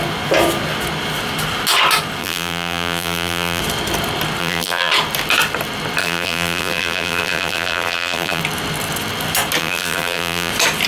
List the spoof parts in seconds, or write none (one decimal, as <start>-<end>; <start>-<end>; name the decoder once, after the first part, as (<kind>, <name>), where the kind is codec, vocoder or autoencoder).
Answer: 2.2-3.6 (vocoder, BigVGAN v2); 4.4-4.9; 6.0-8.4; 9.6-10.5

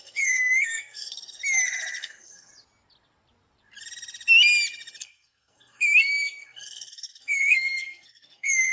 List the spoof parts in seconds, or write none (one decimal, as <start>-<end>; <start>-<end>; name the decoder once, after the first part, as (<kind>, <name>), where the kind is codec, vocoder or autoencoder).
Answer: 0.0-1.4 (codec, SNAC); 2.0-2.5; 5.0-8.7

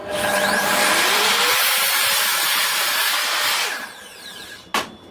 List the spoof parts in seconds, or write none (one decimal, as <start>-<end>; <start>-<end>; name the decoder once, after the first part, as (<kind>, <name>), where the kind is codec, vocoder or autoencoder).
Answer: 1.0-2.3 (vocoder, BigVGAN v2); 4.2-5.1